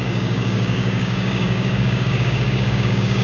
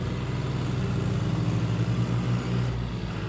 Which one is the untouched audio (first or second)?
second